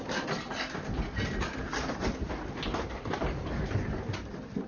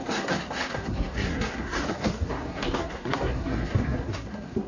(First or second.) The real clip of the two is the first